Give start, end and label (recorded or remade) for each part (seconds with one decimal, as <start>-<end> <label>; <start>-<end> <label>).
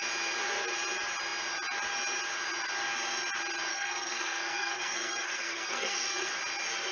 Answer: 0.0-3.7 recorded; 3.7-6.3 remade; 6.3-6.9 recorded